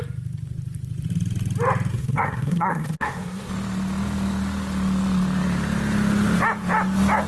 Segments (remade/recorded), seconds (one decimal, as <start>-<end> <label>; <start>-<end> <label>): 0.0-1.9 recorded; 1.9-3.5 remade; 3.5-7.3 recorded